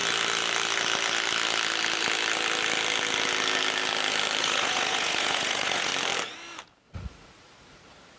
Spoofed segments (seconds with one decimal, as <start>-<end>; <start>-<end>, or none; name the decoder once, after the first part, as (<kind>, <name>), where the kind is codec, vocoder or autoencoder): 4.4-5.9 (vocoder, Vocos); 6.9-8.2